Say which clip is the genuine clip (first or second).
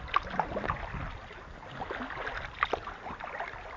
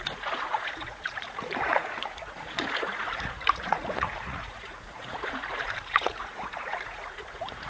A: first